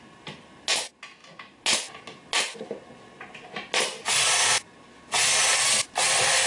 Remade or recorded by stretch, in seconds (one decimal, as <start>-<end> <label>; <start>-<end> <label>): 0.0-6.5 recorded